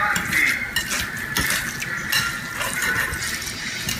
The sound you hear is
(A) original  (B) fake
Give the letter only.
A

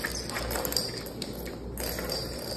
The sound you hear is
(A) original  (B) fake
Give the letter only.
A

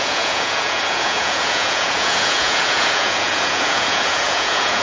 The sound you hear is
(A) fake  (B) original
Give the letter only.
A